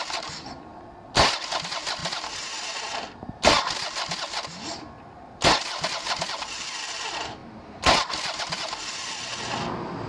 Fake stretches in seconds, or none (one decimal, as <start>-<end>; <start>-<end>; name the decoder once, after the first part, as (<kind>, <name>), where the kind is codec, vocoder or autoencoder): none